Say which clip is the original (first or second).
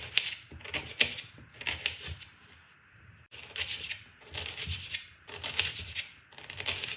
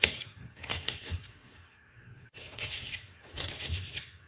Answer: first